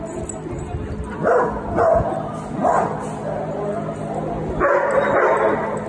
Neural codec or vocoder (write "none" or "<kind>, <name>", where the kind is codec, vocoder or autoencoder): none